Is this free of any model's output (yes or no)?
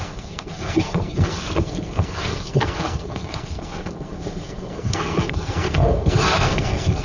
no